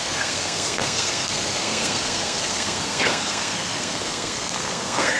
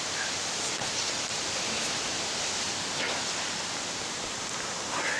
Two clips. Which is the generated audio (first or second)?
first